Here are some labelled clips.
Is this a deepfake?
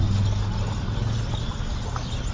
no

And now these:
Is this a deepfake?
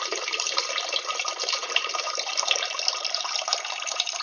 yes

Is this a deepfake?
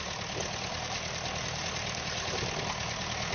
no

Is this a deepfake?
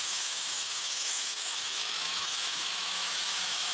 yes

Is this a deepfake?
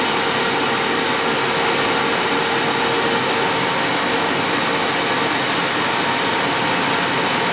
no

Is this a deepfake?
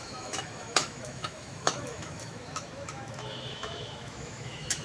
yes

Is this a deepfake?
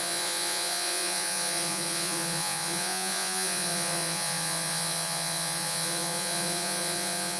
yes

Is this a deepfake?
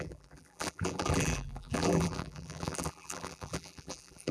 yes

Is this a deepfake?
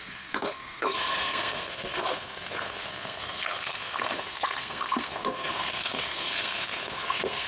yes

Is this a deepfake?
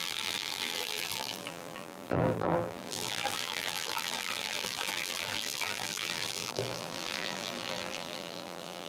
yes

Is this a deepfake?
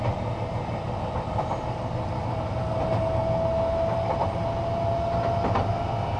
no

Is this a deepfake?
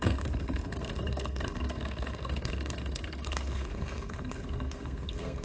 yes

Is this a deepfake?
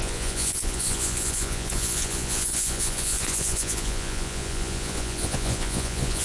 yes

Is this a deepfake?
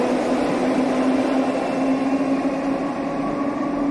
no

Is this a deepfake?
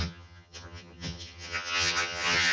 yes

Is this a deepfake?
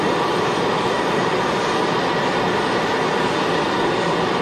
yes